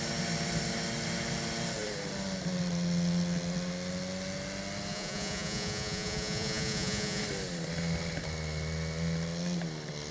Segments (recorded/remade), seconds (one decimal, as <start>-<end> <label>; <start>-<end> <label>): 0.0-4.9 recorded; 4.9-7.2 remade; 7.2-10.1 recorded